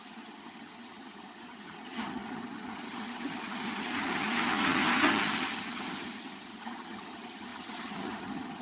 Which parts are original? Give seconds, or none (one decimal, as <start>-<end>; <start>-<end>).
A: none